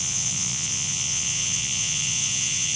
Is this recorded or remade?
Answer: remade